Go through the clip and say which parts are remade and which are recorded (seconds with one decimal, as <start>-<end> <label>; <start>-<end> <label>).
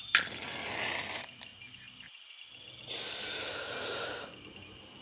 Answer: 0.0-5.0 recorded